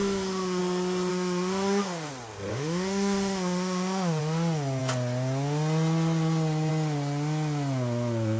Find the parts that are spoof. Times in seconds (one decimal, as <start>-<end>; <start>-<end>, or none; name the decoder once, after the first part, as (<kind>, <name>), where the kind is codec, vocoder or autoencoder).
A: 0.0-0.6 (autoencoder, DAC-VAE); 1.1-2.1; 2.5-4.2